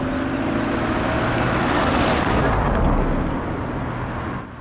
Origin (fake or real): real